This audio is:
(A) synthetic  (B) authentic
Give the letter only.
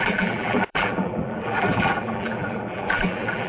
A